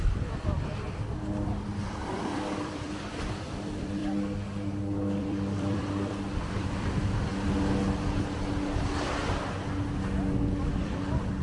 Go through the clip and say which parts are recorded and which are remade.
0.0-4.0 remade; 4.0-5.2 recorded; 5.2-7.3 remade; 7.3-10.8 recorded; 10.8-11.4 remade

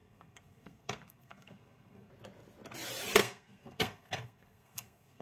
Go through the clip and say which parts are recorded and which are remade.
0.0-2.1 remade; 2.1-3.2 recorded; 3.2-5.2 remade